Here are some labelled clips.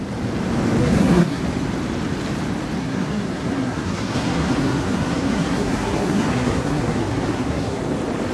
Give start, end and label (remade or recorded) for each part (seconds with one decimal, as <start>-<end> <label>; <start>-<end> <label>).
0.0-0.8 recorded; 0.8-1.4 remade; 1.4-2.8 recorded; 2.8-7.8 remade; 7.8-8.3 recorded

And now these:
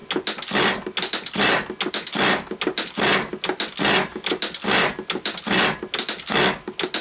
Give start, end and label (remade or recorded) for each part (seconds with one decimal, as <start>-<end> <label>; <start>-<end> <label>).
0.0-7.0 recorded

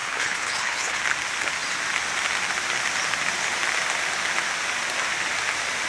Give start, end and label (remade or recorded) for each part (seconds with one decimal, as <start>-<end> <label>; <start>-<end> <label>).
0.0-1.0 remade; 1.0-5.9 recorded

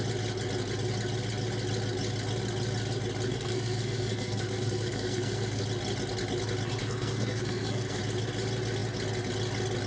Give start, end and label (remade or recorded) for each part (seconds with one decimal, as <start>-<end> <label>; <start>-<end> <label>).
0.0-3.3 recorded; 3.3-5.6 remade; 5.6-6.8 recorded; 6.8-8.0 remade; 8.0-9.9 recorded